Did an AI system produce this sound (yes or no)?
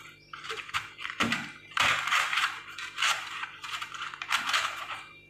yes